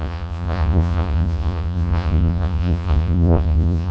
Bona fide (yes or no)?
no